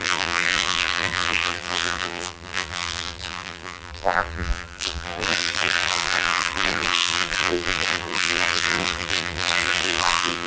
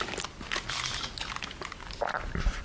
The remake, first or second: first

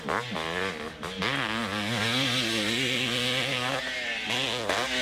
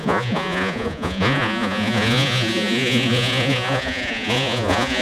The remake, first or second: second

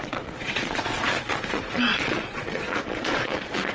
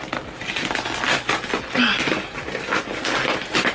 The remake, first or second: first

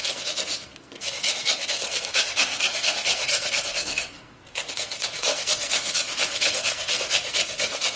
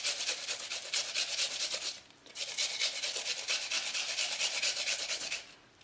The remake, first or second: first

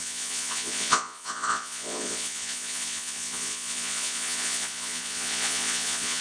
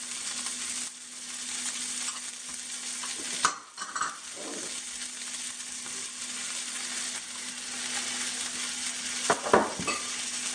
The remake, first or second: first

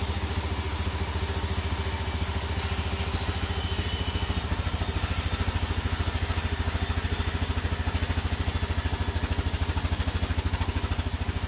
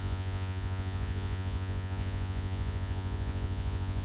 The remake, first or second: second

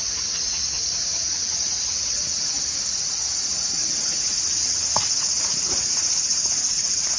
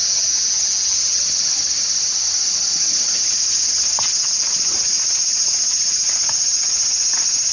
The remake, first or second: first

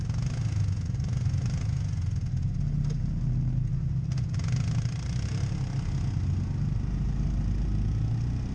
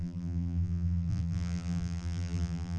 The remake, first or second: second